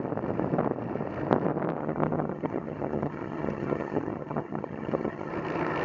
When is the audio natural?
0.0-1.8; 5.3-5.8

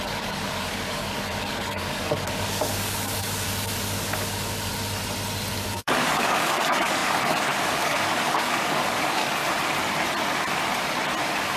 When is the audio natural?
4.7-5.5; 9.4-11.2